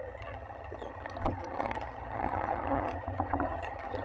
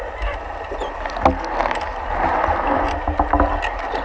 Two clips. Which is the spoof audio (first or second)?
first